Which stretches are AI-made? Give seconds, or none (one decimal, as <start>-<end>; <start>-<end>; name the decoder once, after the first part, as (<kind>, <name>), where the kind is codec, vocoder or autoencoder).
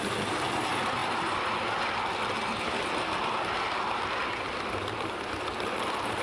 none